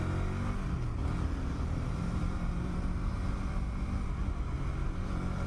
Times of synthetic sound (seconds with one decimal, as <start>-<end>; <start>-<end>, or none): 1.0-3.4